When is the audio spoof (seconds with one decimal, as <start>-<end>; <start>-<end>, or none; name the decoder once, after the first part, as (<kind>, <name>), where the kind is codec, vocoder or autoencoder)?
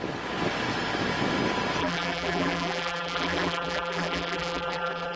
1.8-5.2 (vocoder, BigVGAN v2)